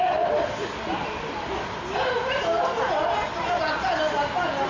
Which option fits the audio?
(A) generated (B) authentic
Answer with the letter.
B